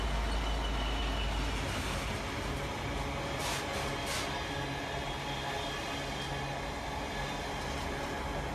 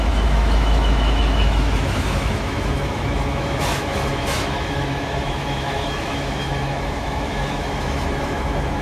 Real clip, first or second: first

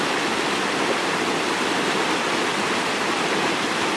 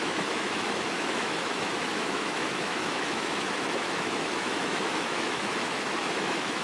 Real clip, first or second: first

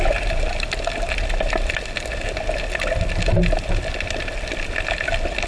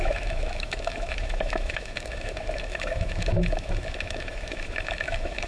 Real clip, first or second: first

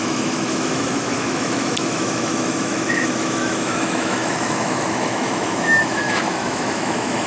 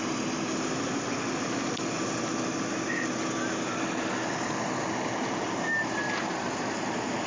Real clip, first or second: second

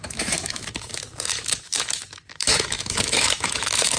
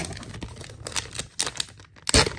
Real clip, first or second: second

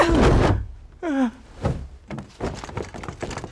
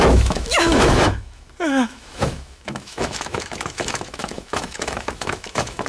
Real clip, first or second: first